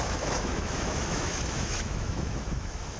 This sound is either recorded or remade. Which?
remade